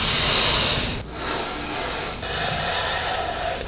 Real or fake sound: real